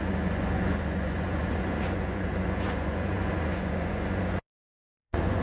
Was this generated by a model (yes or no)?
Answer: yes